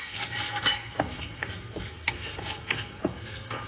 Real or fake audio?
fake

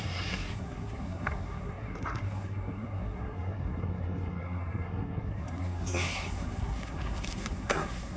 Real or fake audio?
fake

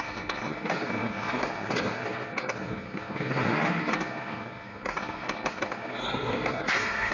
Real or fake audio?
fake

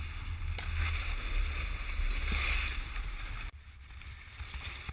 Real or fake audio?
real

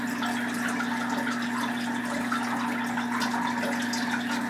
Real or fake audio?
real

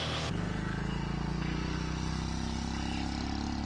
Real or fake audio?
real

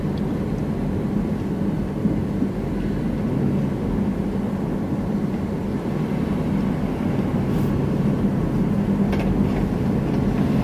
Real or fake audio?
real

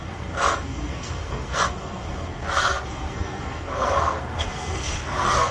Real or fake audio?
fake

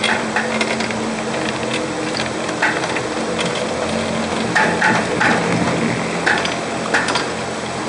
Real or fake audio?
real